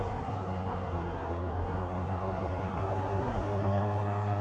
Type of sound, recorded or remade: remade